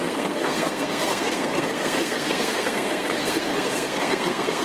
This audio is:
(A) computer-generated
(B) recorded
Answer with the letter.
A